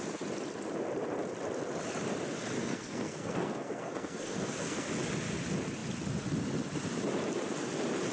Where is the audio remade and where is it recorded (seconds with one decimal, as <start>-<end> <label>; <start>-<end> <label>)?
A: 0.0-2.6 recorded; 2.6-4.9 remade; 4.9-8.1 recorded